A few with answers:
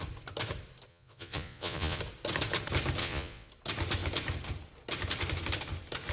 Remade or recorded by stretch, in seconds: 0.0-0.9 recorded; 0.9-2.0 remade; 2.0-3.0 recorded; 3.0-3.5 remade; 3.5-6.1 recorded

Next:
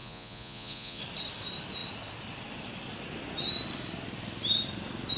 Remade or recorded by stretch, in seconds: 0.0-1.0 remade; 1.0-5.2 recorded

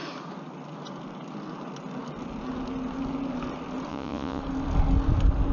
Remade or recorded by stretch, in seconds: 0.0-3.9 recorded; 3.9-4.4 remade; 4.4-5.5 recorded

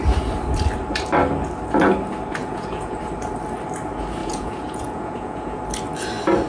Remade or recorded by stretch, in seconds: 0.0-2.4 recorded; 2.4-3.0 remade; 3.0-4.2 recorded; 4.2-5.6 remade; 5.6-6.5 recorded

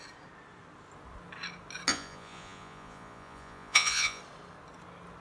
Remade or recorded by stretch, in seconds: 0.0-1.9 recorded; 1.9-4.2 remade; 4.2-5.2 recorded

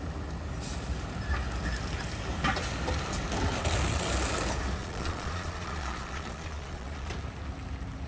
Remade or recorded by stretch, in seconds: 0.0-4.8 recorded; 4.8-7.1 remade; 7.1-8.1 recorded

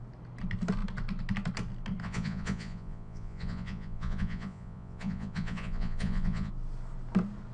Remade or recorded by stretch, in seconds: 0.0-2.0 recorded; 2.0-6.5 remade; 6.5-7.5 recorded

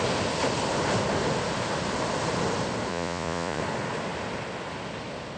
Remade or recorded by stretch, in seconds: 0.0-2.9 recorded; 2.9-3.6 remade; 3.6-5.4 recorded